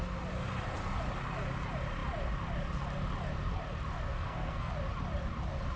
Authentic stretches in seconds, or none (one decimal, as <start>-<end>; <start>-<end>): 0.0-4.1; 4.7-5.8